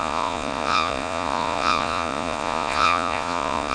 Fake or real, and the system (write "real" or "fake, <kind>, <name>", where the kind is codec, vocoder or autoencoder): fake, vocoder, Vocos